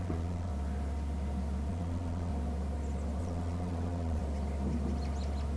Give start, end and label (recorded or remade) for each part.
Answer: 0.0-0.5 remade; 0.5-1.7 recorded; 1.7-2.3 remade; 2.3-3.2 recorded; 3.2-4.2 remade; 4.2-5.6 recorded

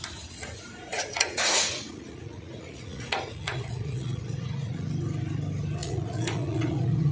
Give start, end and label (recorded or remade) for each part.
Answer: 0.0-0.9 recorded; 0.9-4.9 remade; 4.9-5.8 recorded; 5.8-7.1 remade